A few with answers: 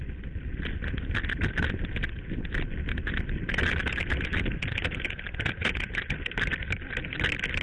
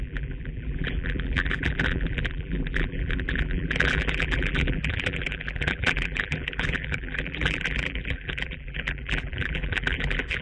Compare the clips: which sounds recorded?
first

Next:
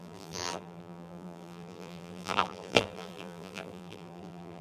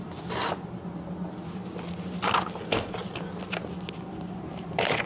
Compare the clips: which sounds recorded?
second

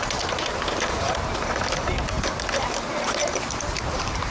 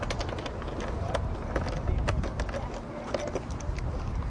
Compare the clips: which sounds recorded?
second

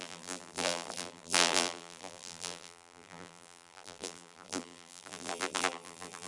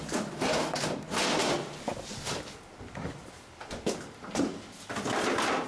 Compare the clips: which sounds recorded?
second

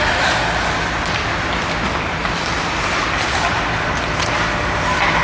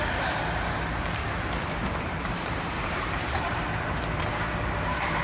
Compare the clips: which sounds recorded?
first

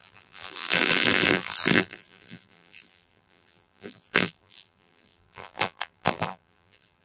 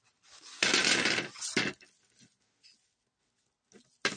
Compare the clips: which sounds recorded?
second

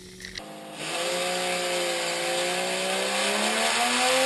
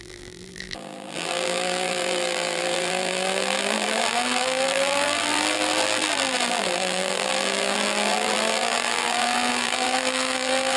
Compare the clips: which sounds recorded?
first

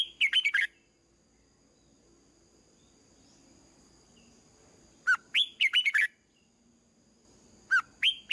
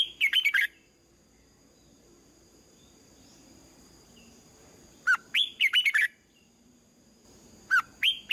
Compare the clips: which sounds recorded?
first